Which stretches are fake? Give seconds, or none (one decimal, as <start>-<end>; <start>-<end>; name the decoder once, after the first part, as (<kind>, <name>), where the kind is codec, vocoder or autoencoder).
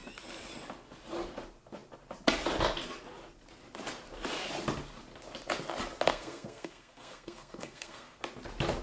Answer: 6.1-8.2 (codec, SNAC)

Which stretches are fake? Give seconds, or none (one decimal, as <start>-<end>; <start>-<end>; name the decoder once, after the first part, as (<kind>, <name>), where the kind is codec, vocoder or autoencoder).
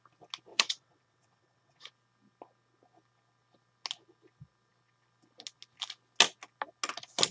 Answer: 0.5-1.9 (vocoder, WaveNeXt)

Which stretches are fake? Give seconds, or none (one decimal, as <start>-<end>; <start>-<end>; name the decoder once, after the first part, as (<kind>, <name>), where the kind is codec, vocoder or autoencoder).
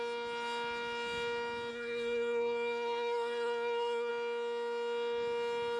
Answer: 1.7-4.1 (codec, SNAC)